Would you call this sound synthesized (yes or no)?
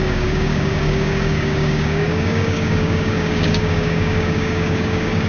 yes